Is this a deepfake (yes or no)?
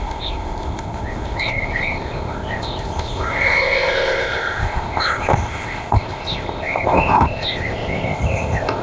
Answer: yes